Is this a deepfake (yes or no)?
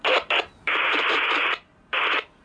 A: yes